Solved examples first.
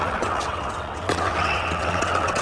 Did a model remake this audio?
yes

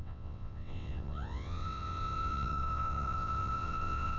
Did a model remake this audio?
yes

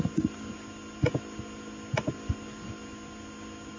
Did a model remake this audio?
no